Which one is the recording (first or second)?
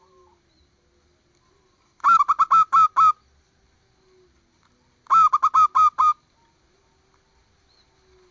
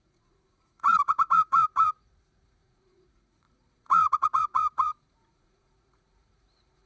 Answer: first